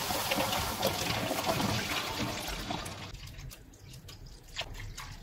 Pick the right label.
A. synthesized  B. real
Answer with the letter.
B